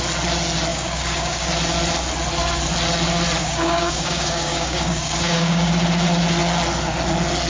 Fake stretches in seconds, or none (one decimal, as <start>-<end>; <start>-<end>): 0.7-1.5; 3.4-5.7